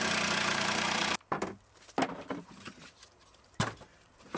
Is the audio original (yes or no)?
no